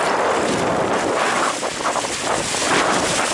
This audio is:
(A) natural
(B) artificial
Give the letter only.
A